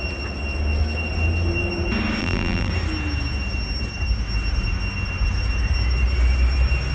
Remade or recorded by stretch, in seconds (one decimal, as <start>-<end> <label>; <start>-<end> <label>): 0.0-2.2 recorded; 2.2-2.7 remade; 2.7-6.9 recorded